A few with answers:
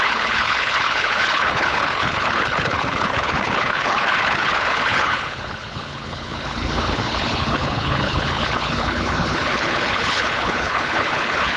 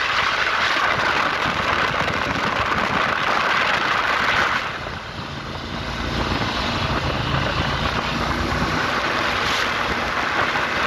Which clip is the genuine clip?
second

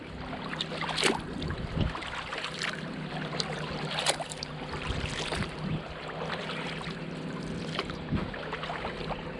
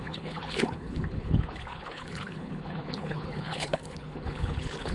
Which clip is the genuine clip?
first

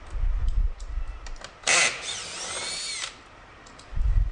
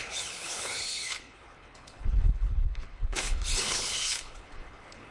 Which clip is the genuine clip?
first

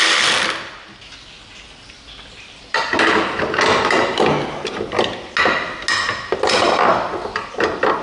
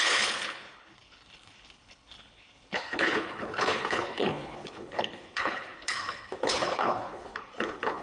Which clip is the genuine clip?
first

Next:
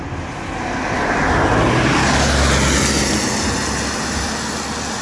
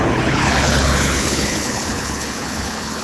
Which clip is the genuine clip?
first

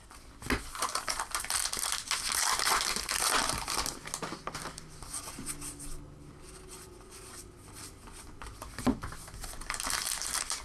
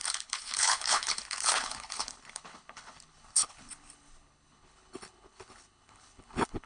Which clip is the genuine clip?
first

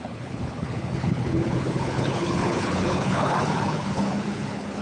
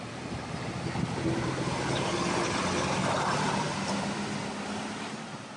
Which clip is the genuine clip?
second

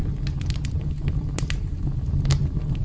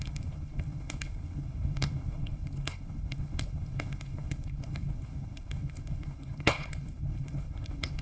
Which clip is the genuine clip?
first